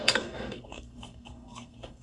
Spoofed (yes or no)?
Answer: yes